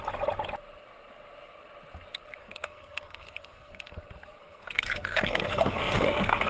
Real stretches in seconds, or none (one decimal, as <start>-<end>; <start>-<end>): 0.0-2.4; 4.0-4.4